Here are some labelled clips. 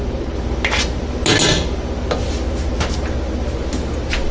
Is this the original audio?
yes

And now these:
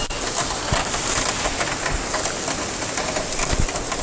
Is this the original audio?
yes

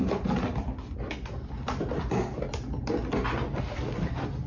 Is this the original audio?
yes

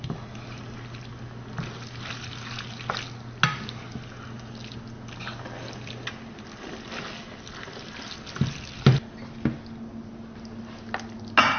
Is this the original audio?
yes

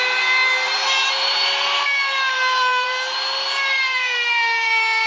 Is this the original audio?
no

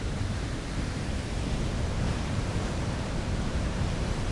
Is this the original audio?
no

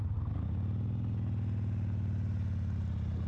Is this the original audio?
yes